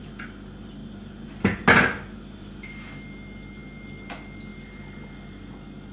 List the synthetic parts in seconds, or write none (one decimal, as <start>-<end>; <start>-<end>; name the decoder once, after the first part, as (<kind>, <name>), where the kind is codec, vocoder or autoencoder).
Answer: none